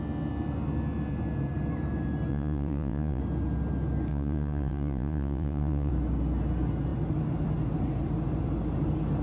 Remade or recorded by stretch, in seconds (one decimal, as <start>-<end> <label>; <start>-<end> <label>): 0.0-2.3 recorded; 2.3-3.2 remade; 3.2-4.1 recorded; 4.1-5.9 remade; 5.9-9.2 recorded